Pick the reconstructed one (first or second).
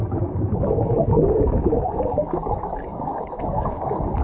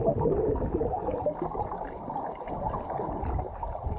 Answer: first